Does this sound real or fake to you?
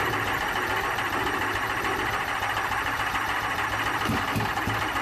real